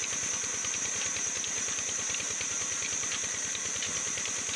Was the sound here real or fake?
real